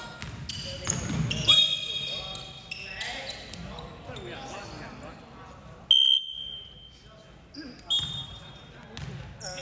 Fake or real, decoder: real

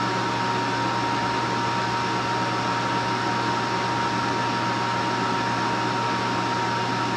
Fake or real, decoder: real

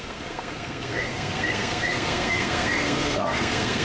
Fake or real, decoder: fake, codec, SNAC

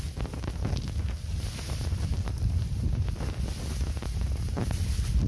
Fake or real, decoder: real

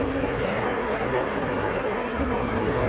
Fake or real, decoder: fake, codec, SNAC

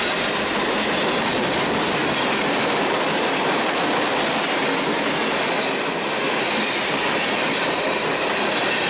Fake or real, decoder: real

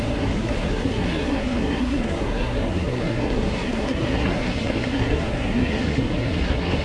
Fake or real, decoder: fake, codec, SNAC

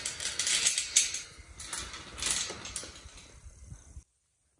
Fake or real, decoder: real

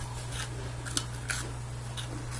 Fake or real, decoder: real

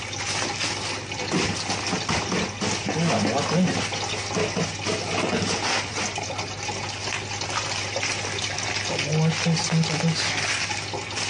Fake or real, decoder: real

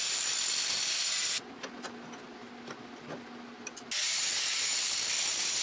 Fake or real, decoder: real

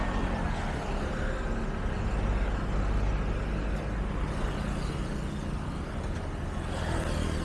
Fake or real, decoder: real